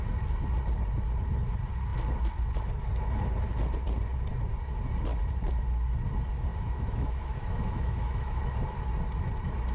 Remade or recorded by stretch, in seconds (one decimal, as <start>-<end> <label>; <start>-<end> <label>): 0.0-6.5 recorded; 6.5-8.4 remade; 8.4-9.7 recorded